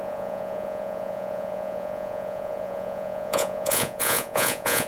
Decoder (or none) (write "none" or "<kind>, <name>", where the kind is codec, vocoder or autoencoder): vocoder, Vocos